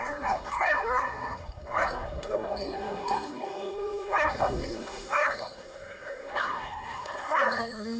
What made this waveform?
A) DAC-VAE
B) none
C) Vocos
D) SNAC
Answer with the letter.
D